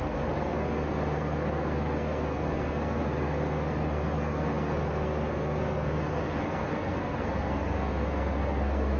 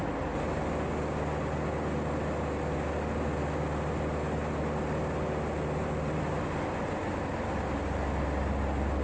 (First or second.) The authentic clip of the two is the second